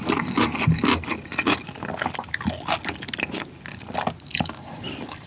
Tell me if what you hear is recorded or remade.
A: recorded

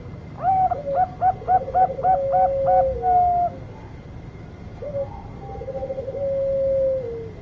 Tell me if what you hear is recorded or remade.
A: recorded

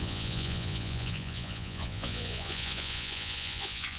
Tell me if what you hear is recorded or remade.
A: remade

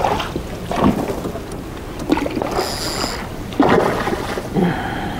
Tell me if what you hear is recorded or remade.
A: recorded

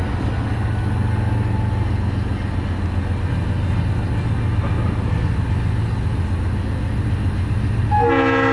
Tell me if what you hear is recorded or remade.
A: recorded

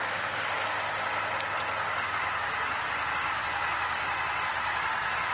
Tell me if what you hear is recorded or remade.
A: recorded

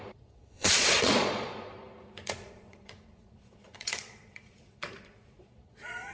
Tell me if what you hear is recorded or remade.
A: remade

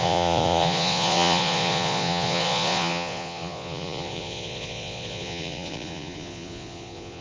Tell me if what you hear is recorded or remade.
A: remade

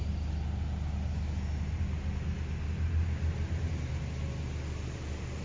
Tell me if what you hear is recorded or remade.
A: recorded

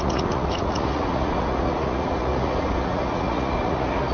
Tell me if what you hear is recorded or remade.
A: remade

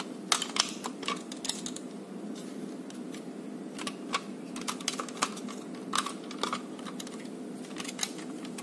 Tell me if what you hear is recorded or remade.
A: recorded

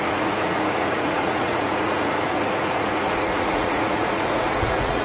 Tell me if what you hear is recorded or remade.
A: remade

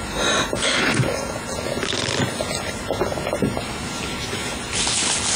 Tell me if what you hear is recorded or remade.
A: recorded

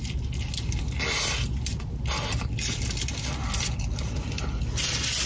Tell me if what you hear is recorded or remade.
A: recorded